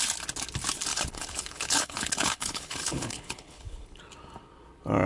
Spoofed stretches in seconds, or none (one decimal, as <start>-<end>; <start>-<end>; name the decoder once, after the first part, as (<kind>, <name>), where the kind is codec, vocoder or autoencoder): 0.9-4.0 (codec, HILCodec)